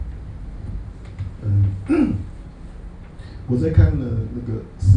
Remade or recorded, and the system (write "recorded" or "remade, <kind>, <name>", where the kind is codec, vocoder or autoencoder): recorded